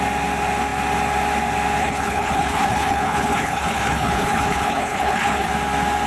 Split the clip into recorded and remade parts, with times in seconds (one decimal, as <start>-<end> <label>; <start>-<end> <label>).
0.0-1.8 recorded; 1.8-5.5 remade; 5.5-6.1 recorded